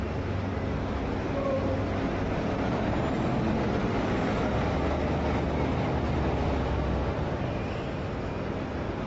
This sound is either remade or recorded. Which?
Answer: recorded